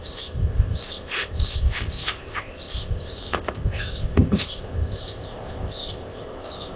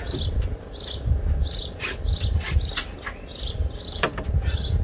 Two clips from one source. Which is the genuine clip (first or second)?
second